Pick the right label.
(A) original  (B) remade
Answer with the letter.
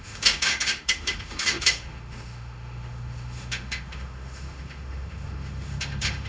B